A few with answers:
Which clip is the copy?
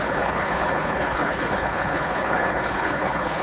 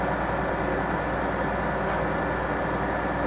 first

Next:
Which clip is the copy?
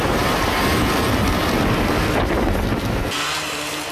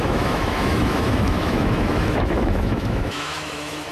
second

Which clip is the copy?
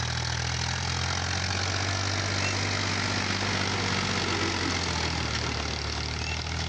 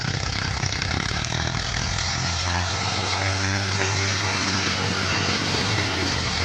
second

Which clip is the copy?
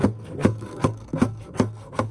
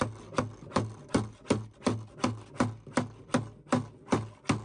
first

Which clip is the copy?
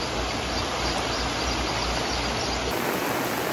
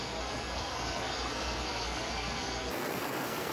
second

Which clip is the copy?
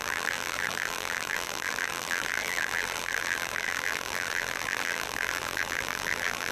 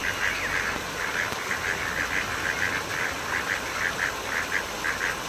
first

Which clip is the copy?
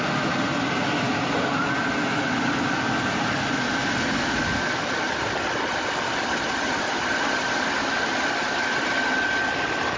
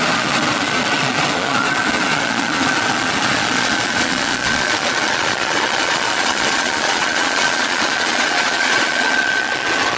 second